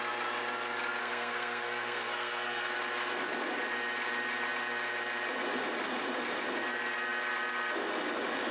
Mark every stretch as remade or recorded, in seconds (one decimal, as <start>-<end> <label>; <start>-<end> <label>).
0.0-1.0 recorded; 1.0-2.7 remade; 2.7-8.5 recorded

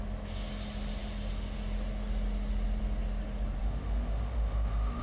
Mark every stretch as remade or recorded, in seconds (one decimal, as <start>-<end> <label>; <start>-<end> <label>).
0.0-3.6 recorded; 3.6-5.0 remade

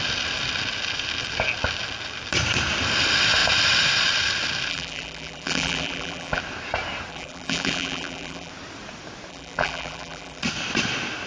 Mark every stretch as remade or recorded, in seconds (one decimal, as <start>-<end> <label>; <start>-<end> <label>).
0.0-4.7 recorded; 4.7-6.4 remade; 6.4-7.1 recorded; 7.1-8.5 remade; 8.5-9.3 recorded; 9.3-10.4 remade; 10.4-11.3 recorded

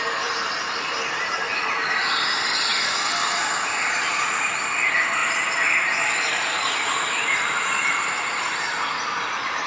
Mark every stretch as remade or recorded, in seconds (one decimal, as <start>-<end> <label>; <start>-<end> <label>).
0.0-9.7 remade